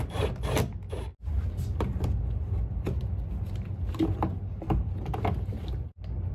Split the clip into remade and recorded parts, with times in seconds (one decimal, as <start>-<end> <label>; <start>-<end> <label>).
0.0-6.3 recorded